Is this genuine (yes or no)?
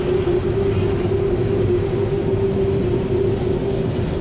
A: yes